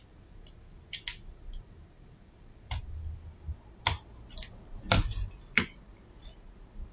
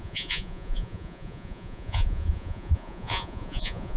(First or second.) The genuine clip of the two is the first